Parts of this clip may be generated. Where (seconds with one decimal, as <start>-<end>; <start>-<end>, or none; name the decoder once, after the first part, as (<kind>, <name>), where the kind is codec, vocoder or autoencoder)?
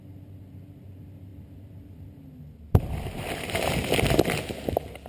none